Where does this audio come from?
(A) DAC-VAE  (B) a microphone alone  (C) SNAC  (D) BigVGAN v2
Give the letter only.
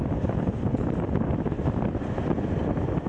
B